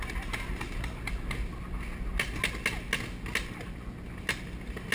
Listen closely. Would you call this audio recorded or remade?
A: recorded